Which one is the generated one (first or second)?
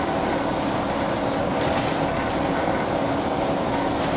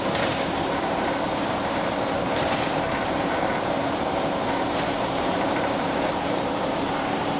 second